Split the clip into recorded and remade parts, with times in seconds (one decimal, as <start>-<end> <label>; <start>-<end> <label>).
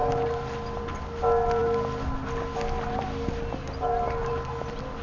0.0-5.0 recorded